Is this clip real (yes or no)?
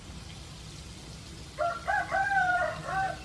yes